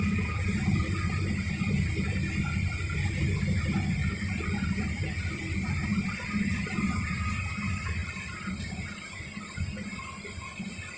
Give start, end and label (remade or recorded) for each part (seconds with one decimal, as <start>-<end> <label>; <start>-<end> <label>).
0.0-11.0 recorded